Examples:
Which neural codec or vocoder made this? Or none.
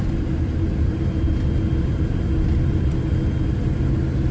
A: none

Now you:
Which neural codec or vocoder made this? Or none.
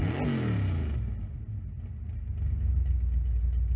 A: none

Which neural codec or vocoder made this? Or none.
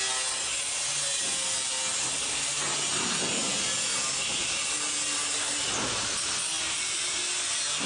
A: none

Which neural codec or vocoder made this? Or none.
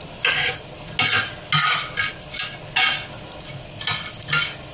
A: none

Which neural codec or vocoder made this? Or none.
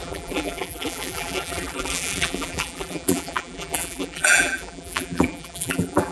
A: vocoder, BigVGAN v2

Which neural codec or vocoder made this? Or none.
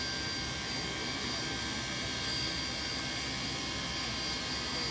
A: none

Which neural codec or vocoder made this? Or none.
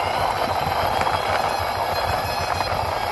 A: none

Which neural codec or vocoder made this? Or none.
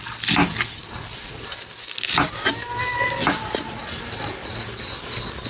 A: none